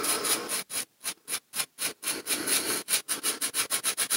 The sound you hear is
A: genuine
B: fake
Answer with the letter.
A